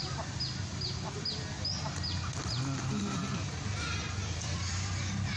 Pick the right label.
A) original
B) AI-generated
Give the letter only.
A